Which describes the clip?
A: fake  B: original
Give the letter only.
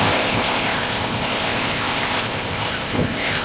A